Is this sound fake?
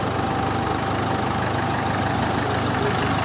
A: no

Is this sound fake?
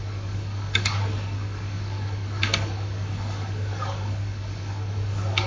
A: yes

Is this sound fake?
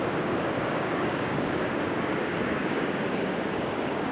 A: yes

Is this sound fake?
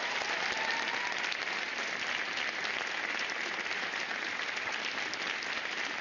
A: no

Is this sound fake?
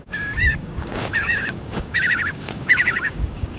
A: yes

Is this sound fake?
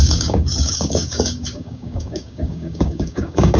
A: yes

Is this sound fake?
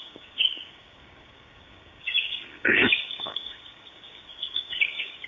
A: yes